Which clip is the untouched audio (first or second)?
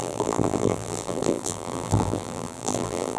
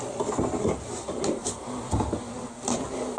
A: second